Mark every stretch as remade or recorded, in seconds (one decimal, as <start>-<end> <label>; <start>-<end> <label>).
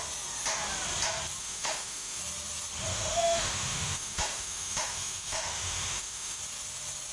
0.0-1.4 recorded; 1.4-2.2 remade; 2.2-2.9 recorded; 2.9-6.4 remade; 6.4-7.1 recorded